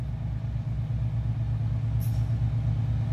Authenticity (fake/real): real